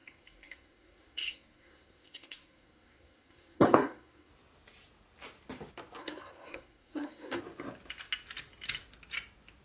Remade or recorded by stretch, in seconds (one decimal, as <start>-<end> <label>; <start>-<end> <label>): 0.0-4.3 remade; 4.3-6.0 recorded; 6.0-7.4 remade; 7.4-9.6 recorded

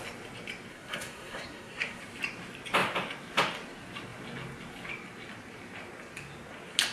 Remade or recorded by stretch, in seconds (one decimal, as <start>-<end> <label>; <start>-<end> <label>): 0.0-0.7 recorded; 0.7-2.0 remade; 2.0-6.9 recorded

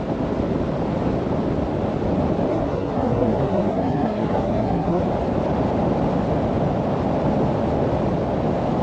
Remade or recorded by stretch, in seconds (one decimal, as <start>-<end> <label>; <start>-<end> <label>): 0.0-2.5 recorded; 2.5-5.0 remade; 5.0-8.8 recorded

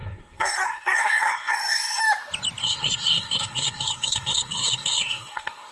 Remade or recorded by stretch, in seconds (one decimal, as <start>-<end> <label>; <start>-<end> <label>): 0.0-2.0 remade; 2.0-2.6 recorded; 2.6-5.7 remade

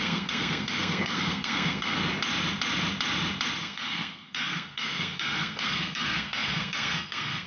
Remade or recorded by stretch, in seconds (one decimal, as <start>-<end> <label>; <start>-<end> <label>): 0.0-2.0 remade; 2.0-3.6 recorded; 3.6-7.5 remade

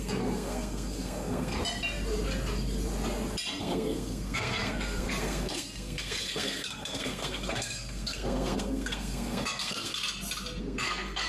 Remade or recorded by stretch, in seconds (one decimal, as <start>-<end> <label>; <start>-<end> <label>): 0.0-1.6 remade; 1.6-3.6 recorded; 3.6-9.9 remade; 9.9-10.6 recorded; 10.6-11.3 remade

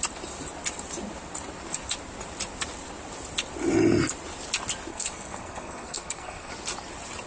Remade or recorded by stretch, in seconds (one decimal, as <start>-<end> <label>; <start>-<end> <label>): 0.0-4.9 recorded; 4.9-6.5 remade; 6.5-7.3 recorded